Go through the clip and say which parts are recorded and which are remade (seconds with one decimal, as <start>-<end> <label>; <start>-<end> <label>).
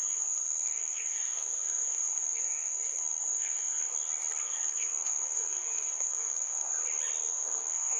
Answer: 0.0-3.8 remade; 3.8-4.4 recorded; 4.4-6.7 remade; 6.7-7.3 recorded; 7.3-8.0 remade